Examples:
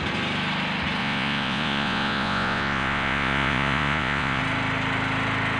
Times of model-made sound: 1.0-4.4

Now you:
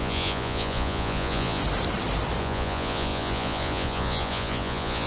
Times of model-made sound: 0.0-1.6; 2.4-5.1

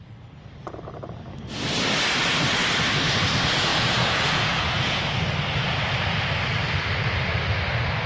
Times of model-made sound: 3.7-5.0

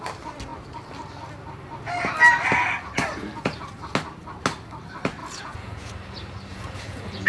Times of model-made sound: 5.2-5.9; 6.5-7.3

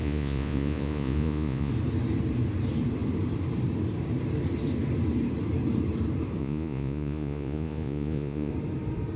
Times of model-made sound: 0.0-1.7; 6.4-8.5

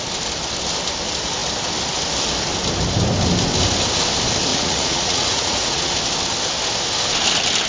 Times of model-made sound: 4.5-5.9

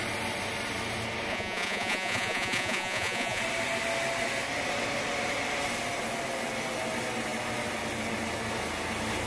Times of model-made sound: 1.3-3.4

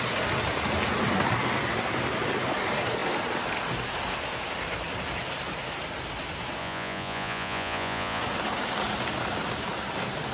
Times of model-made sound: 6.6-8.2